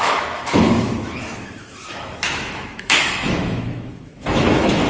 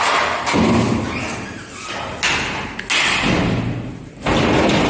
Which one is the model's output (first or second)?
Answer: first